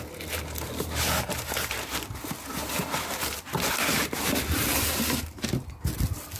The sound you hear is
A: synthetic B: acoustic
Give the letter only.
B